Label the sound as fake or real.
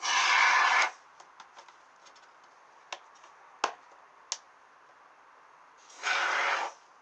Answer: real